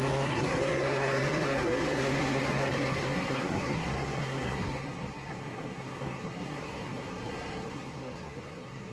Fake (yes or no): yes